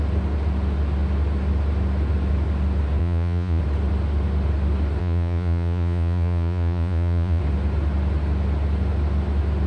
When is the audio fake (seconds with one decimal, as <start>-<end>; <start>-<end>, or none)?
3.0-3.6; 5.0-7.4